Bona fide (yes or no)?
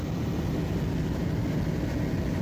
yes